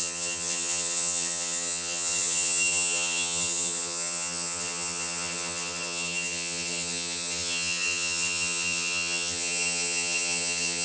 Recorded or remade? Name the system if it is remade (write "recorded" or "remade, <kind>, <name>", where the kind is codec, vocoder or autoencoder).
remade, vocoder, HiFi-GAN